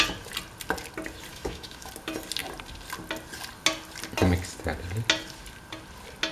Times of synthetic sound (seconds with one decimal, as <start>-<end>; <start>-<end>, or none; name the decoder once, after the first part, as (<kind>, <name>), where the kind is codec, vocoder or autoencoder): 1.3-1.9 (autoencoder, DAC-VAE)